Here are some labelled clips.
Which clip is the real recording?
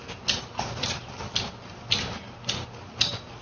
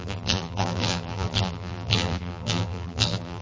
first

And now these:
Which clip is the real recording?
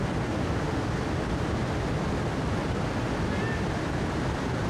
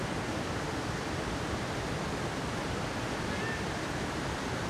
first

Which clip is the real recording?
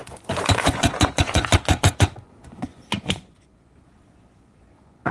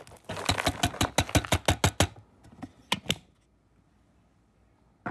second